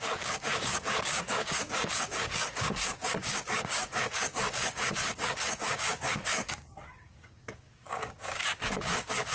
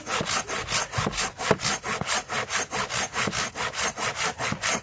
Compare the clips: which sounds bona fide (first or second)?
second